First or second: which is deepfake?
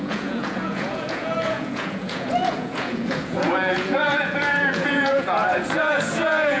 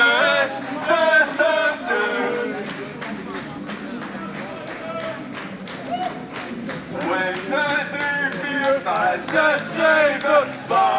first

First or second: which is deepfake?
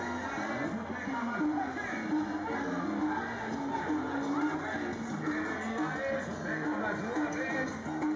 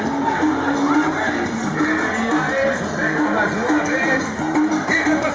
second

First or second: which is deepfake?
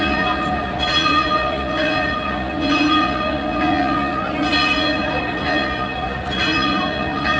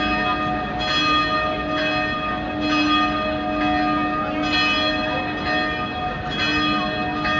first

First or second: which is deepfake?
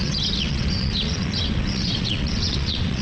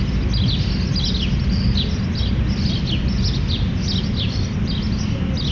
first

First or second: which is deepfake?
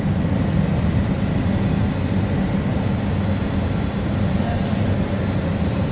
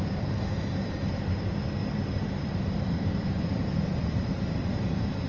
second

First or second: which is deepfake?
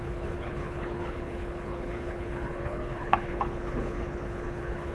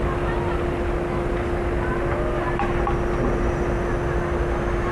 first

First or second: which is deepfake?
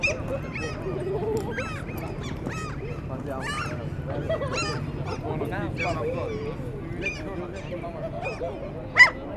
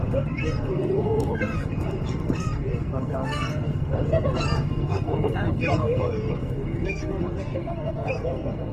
second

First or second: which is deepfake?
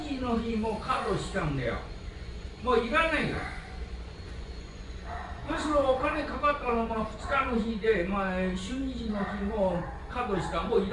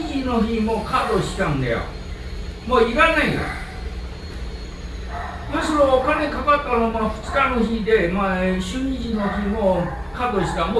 first